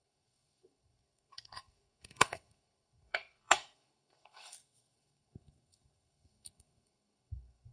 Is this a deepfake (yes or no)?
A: yes